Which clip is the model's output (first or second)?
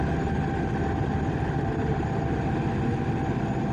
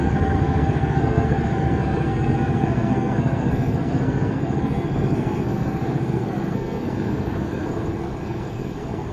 second